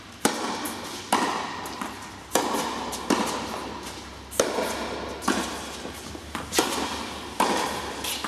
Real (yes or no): yes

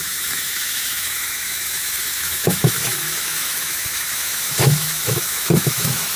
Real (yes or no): no